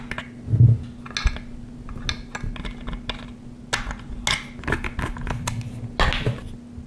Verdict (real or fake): real